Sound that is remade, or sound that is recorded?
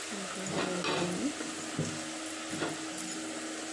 recorded